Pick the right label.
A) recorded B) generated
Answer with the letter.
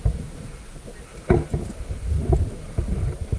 A